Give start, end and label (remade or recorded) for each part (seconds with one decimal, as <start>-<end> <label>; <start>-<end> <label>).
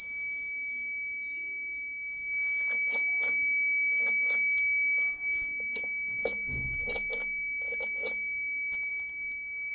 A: 0.0-9.7 recorded